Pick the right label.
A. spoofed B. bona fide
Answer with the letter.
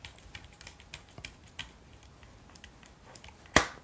B